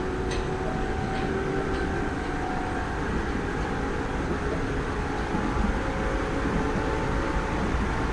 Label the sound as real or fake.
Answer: real